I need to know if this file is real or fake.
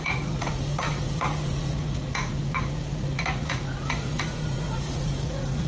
fake